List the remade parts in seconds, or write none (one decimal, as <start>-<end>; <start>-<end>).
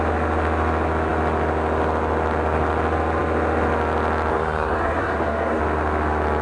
4.3-5.6